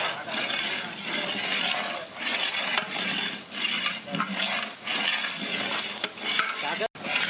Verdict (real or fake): real